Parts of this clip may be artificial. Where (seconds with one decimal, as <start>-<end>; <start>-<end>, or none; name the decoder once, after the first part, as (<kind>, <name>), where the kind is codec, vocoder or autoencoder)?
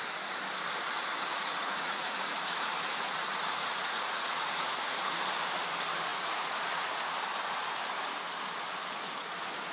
1.3-5.2 (vocoder, Vocos); 6.1-7.0